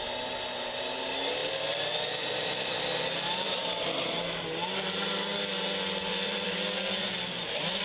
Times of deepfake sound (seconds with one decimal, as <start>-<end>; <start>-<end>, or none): 1.4-3.7; 6.1-7.2